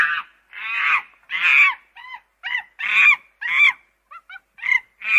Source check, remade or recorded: recorded